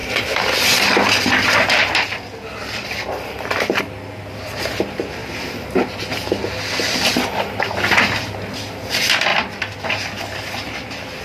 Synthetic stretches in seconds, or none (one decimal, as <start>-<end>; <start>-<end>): 0.0-3.8